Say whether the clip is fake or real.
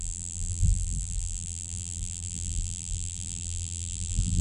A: fake